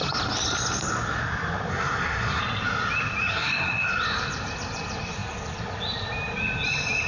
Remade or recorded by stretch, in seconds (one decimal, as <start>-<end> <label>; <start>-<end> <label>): 0.0-1.7 recorded; 1.7-2.4 remade; 2.4-3.3 recorded; 3.3-3.9 remade; 3.9-7.1 recorded